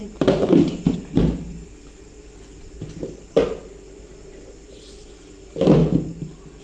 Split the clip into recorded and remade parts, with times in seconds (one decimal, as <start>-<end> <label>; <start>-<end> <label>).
0.0-1.5 remade; 1.5-5.2 recorded; 5.2-5.8 remade; 5.8-6.6 recorded